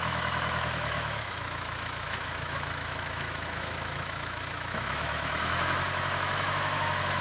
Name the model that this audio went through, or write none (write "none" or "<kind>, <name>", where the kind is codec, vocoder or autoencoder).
autoencoder, DAC-VAE